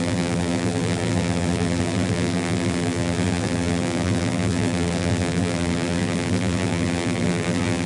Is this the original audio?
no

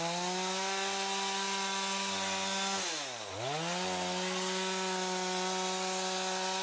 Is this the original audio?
yes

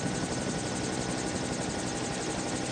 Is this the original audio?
yes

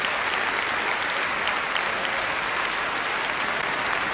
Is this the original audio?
yes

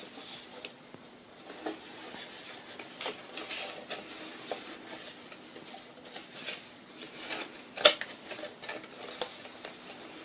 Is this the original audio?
yes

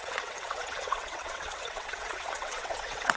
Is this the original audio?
no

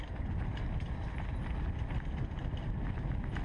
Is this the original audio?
yes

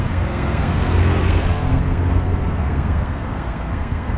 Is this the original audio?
no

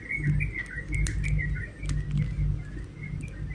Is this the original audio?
yes